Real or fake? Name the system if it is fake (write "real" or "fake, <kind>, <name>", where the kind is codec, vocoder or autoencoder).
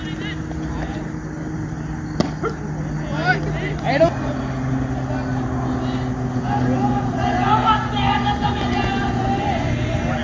real